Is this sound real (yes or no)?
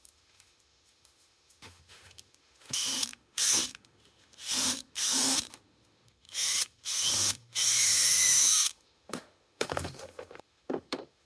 no